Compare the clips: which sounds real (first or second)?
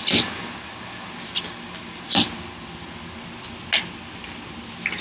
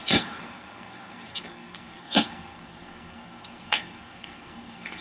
first